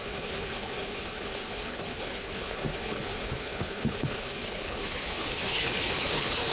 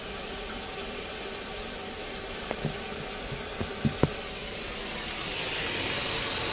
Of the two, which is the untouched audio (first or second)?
second